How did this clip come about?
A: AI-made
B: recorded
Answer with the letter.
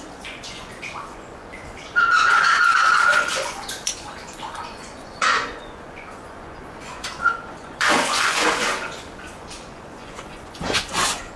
A